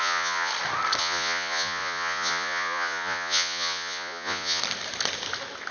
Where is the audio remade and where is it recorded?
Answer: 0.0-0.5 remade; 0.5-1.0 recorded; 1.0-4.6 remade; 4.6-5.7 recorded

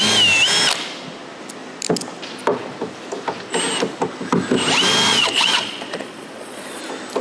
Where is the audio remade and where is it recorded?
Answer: 0.0-5.1 recorded; 5.1-6.8 remade; 6.8-7.2 recorded